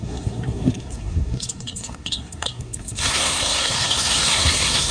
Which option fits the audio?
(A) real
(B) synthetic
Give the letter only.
B